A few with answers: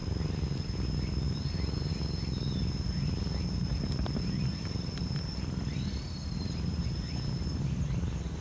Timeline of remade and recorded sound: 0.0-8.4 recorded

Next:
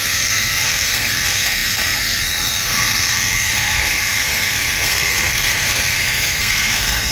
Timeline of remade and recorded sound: 0.0-7.1 remade

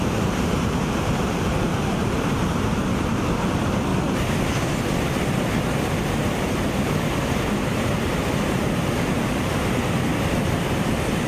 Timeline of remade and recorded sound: 0.0-3.9 remade; 3.9-5.9 recorded; 5.9-11.3 remade

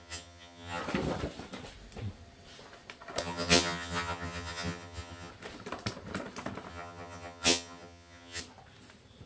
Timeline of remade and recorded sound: 0.0-0.8 remade; 0.8-3.2 recorded; 3.2-5.3 remade; 5.3-6.7 recorded; 6.7-8.4 remade; 8.4-9.3 recorded

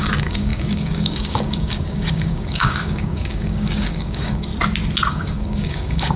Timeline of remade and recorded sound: 0.0-4.5 remade; 4.5-5.1 recorded; 5.1-6.2 remade